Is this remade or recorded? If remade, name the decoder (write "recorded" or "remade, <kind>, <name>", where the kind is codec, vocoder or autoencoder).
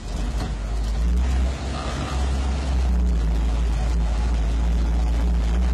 recorded